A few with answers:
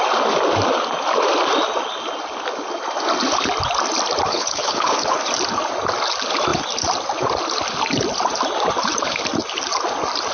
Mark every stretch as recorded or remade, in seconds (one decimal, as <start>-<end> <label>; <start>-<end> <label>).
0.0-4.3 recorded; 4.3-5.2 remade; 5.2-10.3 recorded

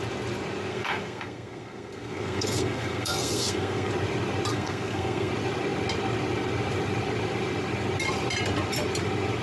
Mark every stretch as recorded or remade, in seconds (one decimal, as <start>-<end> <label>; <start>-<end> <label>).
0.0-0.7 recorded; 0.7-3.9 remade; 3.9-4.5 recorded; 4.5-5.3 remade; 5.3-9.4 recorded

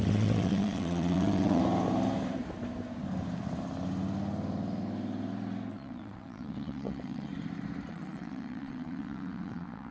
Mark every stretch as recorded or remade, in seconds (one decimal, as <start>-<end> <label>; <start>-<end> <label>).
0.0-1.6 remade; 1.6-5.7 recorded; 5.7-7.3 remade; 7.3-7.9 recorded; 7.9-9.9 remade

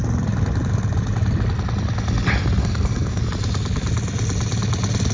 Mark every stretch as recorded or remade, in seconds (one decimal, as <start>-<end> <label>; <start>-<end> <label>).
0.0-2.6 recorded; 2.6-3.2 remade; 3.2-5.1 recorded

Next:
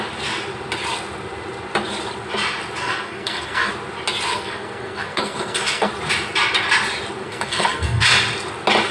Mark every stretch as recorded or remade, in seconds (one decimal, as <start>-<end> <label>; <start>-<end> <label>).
0.0-2.8 recorded; 2.8-3.7 remade; 3.7-4.3 recorded; 4.3-5.9 remade; 5.9-7.2 recorded; 7.2-8.0 remade; 8.0-8.9 recorded

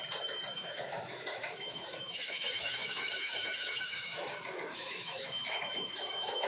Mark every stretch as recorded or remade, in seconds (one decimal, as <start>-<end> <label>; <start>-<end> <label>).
0.0-0.5 recorded; 0.5-6.5 remade

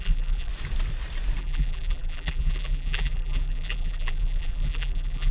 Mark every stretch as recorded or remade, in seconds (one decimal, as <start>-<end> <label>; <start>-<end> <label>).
0.0-0.5 remade; 0.5-1.4 recorded; 1.4-5.3 remade